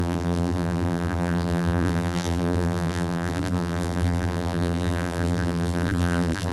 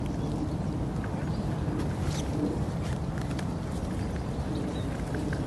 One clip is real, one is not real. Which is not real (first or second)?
first